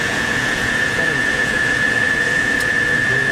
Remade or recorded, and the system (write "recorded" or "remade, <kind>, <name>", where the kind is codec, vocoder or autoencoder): remade, vocoder, Vocos